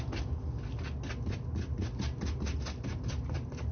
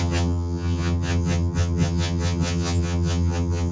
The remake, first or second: second